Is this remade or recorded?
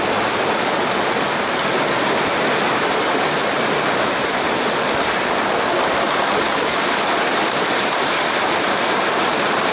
remade